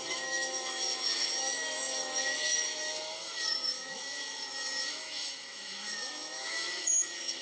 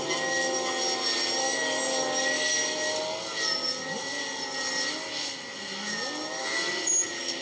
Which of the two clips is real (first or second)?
second